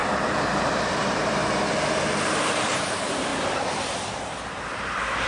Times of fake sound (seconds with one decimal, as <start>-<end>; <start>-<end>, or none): 0.0-1.4; 2.4-3.3; 4.3-5.3